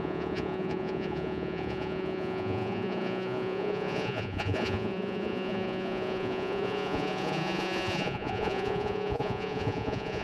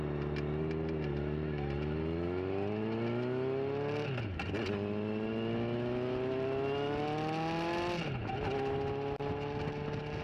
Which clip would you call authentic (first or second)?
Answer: second